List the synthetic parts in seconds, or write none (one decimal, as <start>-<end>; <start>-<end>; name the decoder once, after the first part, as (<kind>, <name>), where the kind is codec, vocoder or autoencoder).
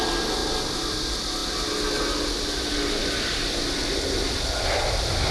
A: none